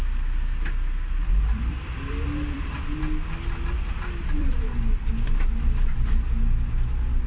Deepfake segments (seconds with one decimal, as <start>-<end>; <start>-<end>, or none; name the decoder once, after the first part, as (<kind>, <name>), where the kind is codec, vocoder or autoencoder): 1.3-3.0 (vocoder, BigVGAN v2); 4.4-5.1